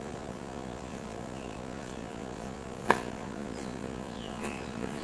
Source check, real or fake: fake